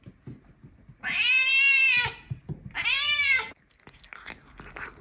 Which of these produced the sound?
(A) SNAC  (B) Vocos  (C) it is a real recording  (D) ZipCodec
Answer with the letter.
C